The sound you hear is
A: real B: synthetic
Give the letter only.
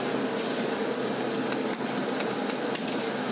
A